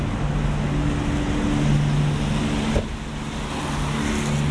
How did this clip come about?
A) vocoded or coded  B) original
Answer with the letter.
B